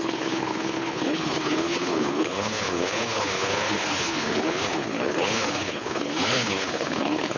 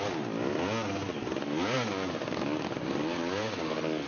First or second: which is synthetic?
first